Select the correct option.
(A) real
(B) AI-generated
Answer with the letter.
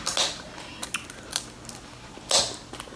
A